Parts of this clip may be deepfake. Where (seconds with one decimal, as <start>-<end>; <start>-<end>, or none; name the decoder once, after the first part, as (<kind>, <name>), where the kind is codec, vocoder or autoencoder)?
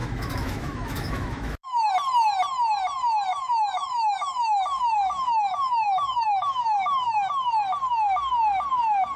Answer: 0.0-1.9 (autoencoder, DAC-VAE); 3.3-7.3